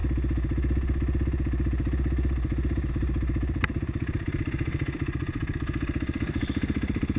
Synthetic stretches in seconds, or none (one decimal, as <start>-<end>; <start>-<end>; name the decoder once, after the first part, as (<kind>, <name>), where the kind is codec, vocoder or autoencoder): 2.9-7.2 (vocoder, BigVGAN v2)